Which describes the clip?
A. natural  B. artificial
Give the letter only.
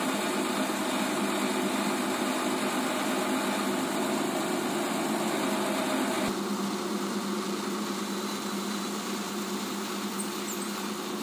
A